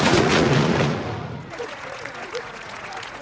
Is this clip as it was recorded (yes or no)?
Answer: no